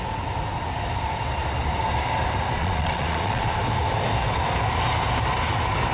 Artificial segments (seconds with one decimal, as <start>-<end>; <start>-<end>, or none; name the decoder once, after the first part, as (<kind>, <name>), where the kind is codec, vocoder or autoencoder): 2.6-3.4 (vocoder, Vocos)